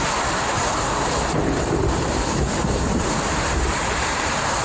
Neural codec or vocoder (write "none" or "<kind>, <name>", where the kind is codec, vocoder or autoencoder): vocoder, BigVGAN v2